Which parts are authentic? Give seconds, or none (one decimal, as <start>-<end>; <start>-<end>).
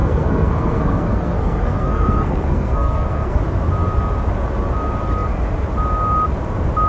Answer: 3.4-6.9